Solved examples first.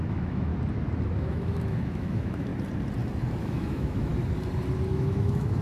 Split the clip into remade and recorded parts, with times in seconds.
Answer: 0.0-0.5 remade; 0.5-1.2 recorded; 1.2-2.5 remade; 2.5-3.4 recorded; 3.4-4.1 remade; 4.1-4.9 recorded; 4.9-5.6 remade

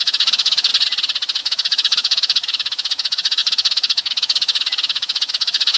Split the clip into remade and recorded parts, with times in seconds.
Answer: 0.0-0.7 remade; 0.7-1.4 recorded; 1.4-5.8 remade

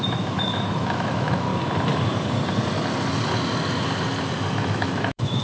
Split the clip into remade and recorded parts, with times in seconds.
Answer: 0.0-1.5 remade; 1.5-4.5 recorded; 4.5-5.4 remade

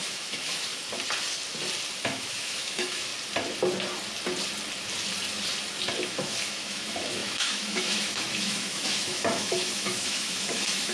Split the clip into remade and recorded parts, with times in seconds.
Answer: 0.0-0.7 remade; 0.7-2.0 recorded; 2.0-3.1 remade; 3.1-6.0 recorded; 6.0-10.9 remade

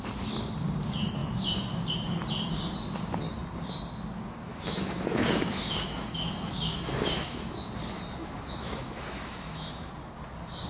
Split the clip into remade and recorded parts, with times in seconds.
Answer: 0.0-4.5 recorded; 4.5-7.7 remade; 7.7-8.2 recorded; 8.2-9.9 remade; 9.9-10.7 recorded